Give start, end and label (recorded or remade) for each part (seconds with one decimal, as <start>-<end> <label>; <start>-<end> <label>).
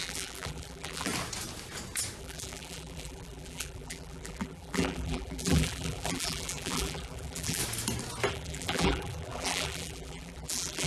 0.0-1.1 remade; 1.1-2.2 recorded; 2.2-7.6 remade; 7.6-8.3 recorded; 8.3-10.9 remade